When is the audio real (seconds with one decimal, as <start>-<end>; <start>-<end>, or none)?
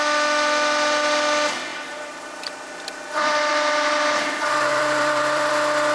0.0-1.7; 3.5-4.7; 5.5-5.9